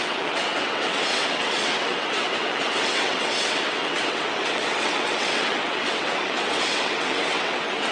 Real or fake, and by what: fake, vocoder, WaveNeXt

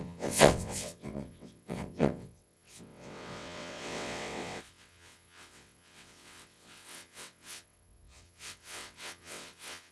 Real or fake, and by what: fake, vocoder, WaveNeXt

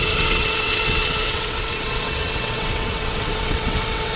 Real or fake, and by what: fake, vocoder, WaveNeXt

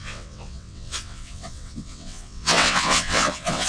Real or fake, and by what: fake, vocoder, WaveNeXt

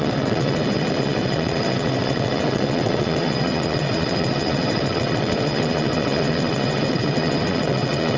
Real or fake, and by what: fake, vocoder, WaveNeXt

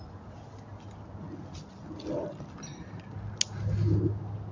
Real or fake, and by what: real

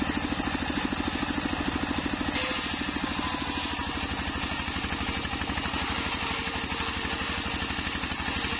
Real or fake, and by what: real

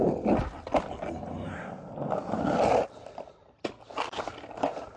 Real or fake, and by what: real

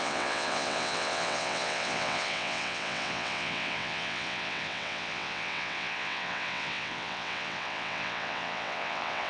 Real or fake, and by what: fake, vocoder, WaveNeXt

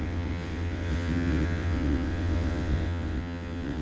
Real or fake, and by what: fake, vocoder, WaveNeXt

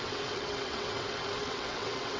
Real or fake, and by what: fake, vocoder, WaveNeXt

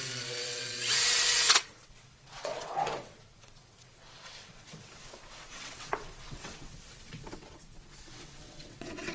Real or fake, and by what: fake, vocoder, WaveNeXt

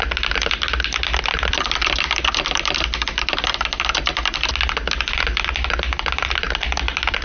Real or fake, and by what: real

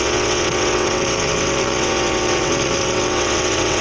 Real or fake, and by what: fake, vocoder, WaveNeXt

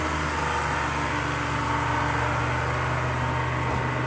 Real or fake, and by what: real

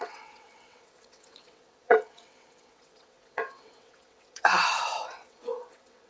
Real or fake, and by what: fake, vocoder, WaveNeXt